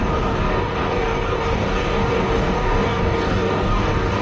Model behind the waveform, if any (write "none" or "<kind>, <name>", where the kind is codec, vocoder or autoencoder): codec, DAC